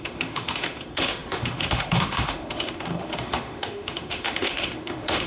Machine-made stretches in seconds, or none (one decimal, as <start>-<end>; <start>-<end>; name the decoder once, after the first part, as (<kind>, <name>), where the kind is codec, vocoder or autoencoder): 0.0-5.3 (autoencoder, DAC-VAE)